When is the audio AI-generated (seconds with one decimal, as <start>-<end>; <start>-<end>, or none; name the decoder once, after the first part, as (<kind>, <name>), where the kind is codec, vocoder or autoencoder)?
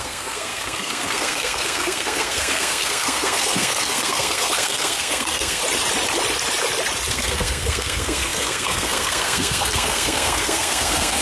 0.0-5.6 (codec, SNAC); 7.1-11.2